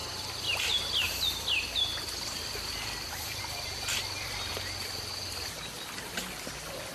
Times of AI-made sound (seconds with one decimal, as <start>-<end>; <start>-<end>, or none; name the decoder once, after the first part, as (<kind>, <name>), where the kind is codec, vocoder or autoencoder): none